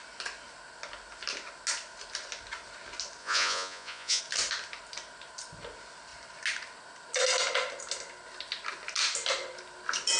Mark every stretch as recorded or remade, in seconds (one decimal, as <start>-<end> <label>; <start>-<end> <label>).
0.0-3.2 recorded; 3.2-4.2 remade; 4.2-10.2 recorded